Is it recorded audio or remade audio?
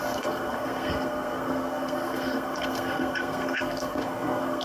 remade